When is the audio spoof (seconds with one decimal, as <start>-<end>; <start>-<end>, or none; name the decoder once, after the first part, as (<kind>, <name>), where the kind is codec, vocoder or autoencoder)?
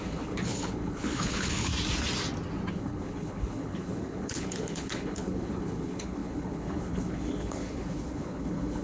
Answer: 0.0-1.7 (codec, HILCodec); 2.7-8.8